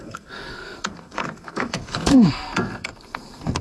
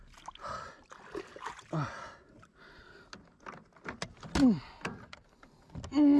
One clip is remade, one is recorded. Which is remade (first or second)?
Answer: first